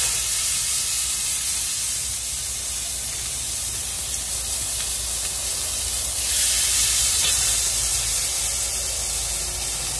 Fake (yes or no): no